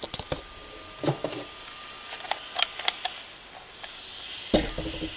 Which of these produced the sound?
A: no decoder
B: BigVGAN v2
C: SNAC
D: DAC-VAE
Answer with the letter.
A